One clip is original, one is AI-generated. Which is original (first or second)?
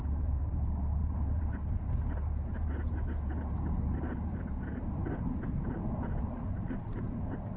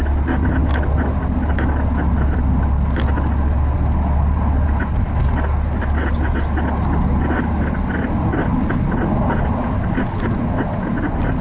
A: second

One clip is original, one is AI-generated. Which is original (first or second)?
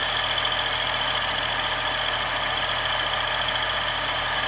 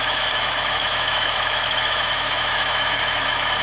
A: first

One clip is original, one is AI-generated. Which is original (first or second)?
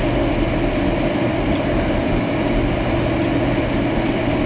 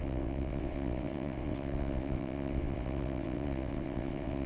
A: first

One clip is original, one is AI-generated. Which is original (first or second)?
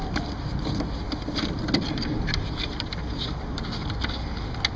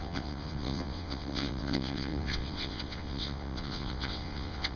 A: first